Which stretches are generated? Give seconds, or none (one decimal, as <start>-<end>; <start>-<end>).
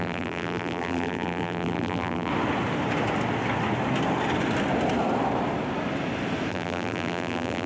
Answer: 0.0-2.3; 6.5-7.7